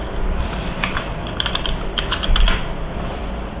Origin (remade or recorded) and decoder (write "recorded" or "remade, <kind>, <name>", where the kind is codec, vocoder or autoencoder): remade, vocoder, BigVGAN v2